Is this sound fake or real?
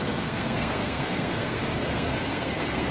fake